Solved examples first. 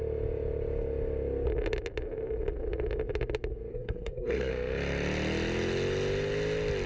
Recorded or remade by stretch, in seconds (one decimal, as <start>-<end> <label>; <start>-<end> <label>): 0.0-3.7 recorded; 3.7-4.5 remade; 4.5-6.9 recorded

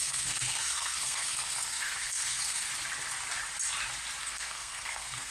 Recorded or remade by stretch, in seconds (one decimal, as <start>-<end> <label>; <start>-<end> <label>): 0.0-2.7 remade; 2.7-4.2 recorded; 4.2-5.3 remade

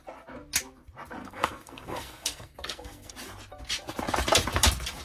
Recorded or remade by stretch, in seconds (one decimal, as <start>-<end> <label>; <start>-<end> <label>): 0.0-1.2 recorded; 1.2-3.1 remade; 3.1-5.0 recorded

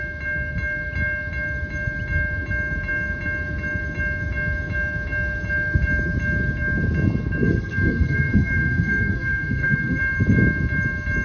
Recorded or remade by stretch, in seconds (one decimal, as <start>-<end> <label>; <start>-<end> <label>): 0.0-7.4 recorded; 7.4-10.0 remade; 10.0-11.2 recorded